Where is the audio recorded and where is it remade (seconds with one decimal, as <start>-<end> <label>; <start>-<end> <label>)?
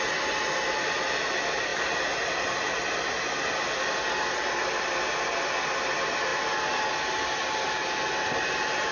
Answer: 0.0-8.9 recorded